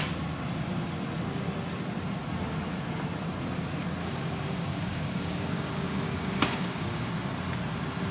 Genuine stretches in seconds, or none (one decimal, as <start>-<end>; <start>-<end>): 0.0-4.0; 7.1-8.1